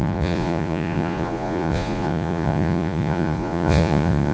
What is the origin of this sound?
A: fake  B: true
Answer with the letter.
A